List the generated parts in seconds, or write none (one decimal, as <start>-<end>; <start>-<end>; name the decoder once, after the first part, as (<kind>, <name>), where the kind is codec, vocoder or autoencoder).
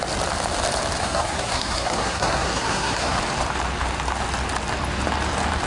1.0-3.2 (codec, SNAC)